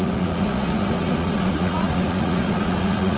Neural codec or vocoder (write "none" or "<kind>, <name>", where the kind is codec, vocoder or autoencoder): vocoder, Vocos